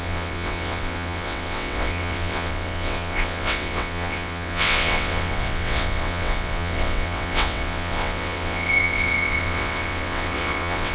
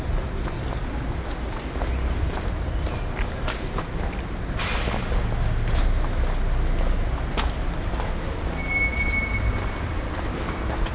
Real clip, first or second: second